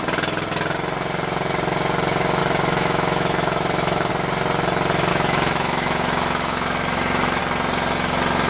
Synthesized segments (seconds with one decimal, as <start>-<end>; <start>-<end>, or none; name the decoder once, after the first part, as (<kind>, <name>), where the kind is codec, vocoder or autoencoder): 2.4-4.1 (autoencoder, DAC-VAE); 5.1-7.4

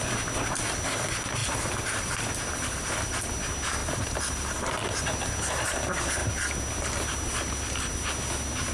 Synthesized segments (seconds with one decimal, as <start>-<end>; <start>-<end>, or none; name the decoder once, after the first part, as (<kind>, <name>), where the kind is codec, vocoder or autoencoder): 1.4-3.3 (vocoder, BigVGAN v2); 3.8-5.0

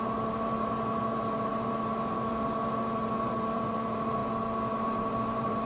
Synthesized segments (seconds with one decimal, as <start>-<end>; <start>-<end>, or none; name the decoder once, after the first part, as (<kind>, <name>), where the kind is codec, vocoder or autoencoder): 0.0-4.2 (vocoder, BigVGAN v2); 4.7-5.7

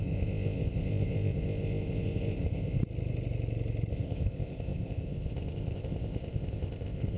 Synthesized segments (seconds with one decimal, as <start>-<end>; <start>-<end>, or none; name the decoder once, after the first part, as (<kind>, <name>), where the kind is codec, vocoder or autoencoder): 0.0-2.8 (codec, ZipCodec); 3.9-7.2